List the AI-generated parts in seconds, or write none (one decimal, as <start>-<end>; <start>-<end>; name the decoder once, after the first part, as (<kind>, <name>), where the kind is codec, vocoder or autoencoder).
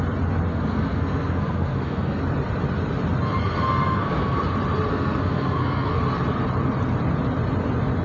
0.5-2.2 (codec, SNAC); 3.4-4.4; 4.9-6.0